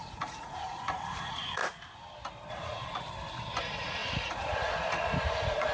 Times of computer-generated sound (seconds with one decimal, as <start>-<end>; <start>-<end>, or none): 0.0-1.6; 2.5-2.9; 3.6-5.7